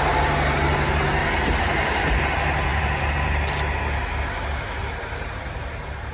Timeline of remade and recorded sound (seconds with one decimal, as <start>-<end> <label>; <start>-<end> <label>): 0.0-1.2 recorded; 1.2-2.2 remade; 2.2-2.7 recorded; 2.7-3.4 remade; 3.4-4.8 recorded; 4.8-6.1 remade